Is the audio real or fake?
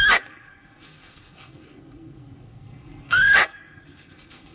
fake